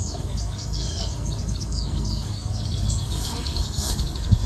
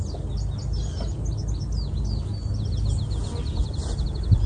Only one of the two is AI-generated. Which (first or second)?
first